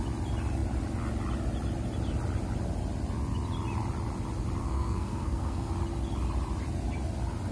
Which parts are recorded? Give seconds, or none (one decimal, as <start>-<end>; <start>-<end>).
0.0-4.6; 5.7-7.5